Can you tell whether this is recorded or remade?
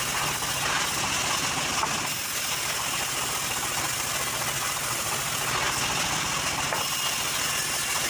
recorded